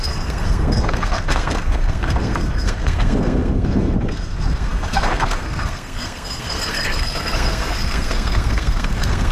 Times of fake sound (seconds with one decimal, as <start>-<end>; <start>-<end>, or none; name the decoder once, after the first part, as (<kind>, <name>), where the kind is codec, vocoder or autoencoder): 0.0-9.3 (codec, SNAC)